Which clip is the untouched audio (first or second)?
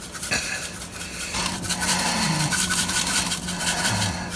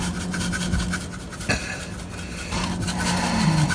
second